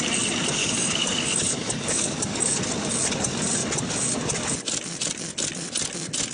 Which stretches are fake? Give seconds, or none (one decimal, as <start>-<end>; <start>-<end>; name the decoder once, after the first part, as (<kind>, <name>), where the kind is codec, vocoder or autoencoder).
0.6-2.6 (codec, DAC)